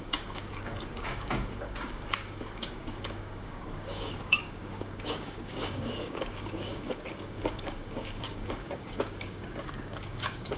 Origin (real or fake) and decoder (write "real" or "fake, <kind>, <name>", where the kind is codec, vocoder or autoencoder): fake, codec, DAC